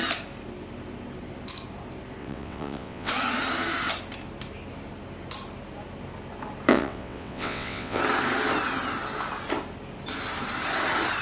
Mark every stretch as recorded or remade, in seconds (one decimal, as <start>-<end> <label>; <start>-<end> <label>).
0.0-2.2 recorded; 2.2-3.1 remade; 3.1-6.7 recorded; 6.7-8.0 remade; 8.0-11.2 recorded